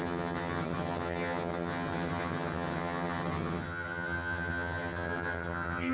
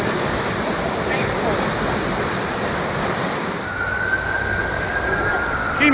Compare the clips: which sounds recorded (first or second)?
second